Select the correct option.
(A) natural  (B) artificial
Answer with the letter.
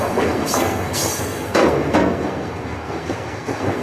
B